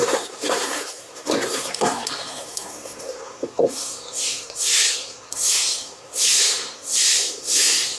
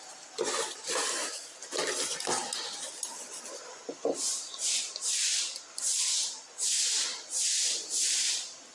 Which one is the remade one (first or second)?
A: first